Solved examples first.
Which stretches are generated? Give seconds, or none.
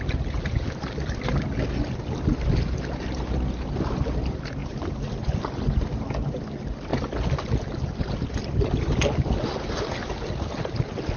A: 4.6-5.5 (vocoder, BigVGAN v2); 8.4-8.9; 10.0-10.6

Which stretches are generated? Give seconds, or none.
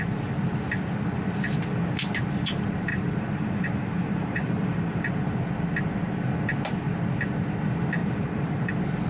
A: 2.9-5.0 (vocoder, BigVGAN v2); 8.0-8.7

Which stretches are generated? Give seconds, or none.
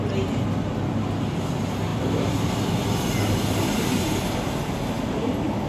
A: 1.9-4.4 (vocoder, BigVGAN v2)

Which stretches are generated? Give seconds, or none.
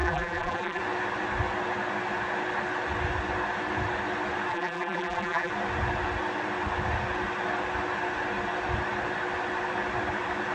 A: 0.0-0.8 (vocoder, BigVGAN v2); 4.5-5.5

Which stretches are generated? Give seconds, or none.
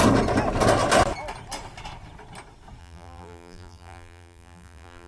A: 2.8-5.1 (vocoder, BigVGAN v2)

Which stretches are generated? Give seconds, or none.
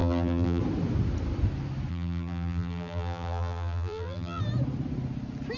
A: 0.0-0.6 (vocoder, BigVGAN v2); 1.9-4.4